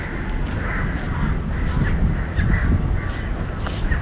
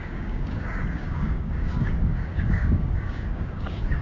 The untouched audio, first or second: first